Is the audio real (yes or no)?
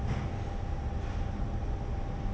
yes